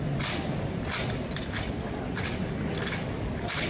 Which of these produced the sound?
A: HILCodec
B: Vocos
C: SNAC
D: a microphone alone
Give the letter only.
D